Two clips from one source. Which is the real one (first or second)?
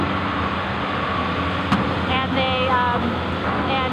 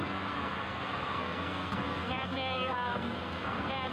first